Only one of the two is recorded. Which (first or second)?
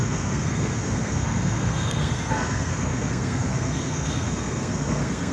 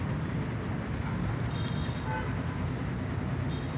second